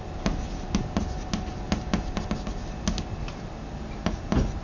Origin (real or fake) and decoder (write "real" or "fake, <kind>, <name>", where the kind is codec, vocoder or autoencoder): real